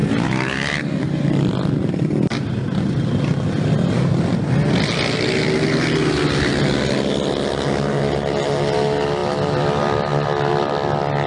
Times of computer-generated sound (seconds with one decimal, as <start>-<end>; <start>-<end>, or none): 0.0-1.3